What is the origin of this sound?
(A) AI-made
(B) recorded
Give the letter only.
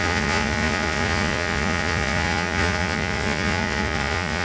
A